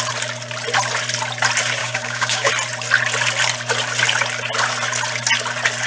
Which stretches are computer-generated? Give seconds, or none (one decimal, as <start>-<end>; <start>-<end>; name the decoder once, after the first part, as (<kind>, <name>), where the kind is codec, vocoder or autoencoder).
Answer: 1.8-2.5 (codec, DAC)